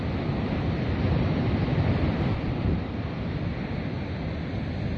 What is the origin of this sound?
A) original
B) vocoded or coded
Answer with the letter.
A